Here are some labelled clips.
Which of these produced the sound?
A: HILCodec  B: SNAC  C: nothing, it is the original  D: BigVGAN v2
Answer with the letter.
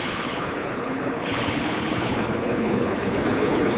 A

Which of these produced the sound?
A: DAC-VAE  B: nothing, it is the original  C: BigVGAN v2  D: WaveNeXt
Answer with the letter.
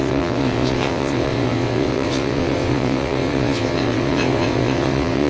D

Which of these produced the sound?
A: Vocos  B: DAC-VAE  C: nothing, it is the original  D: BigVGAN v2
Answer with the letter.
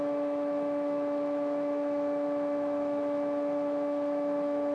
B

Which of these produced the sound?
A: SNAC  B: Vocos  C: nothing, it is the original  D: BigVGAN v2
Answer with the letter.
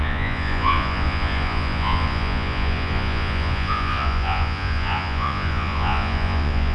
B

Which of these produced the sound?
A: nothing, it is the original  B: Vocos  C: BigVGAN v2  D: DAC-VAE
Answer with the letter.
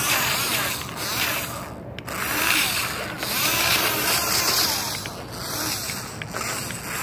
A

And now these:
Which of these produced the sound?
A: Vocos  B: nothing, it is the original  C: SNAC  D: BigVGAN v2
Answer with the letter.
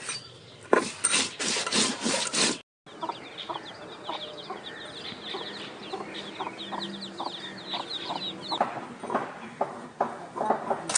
B